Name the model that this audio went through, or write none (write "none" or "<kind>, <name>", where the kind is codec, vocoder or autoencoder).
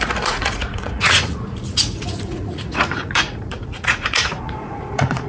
vocoder, Vocos